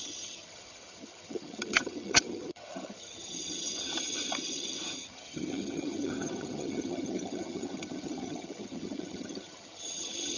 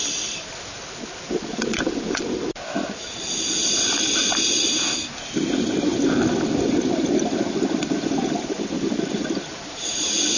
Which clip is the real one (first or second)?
second